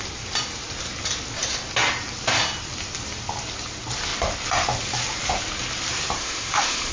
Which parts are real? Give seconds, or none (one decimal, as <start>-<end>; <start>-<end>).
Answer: 0.0-6.2